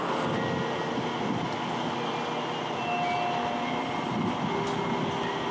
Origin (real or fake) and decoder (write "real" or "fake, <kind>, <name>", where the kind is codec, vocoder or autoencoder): real